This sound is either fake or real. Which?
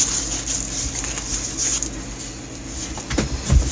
real